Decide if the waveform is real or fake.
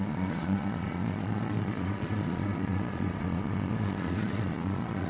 fake